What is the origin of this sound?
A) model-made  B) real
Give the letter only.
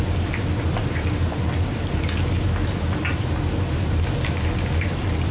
B